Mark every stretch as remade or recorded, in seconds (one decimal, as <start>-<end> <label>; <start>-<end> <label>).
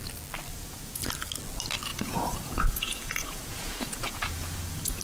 0.0-0.5 recorded; 0.5-1.0 remade; 1.0-1.9 recorded; 1.9-5.0 remade